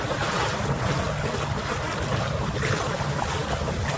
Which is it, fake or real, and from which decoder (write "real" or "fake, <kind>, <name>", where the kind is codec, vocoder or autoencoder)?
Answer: real